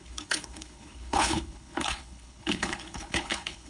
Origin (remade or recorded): remade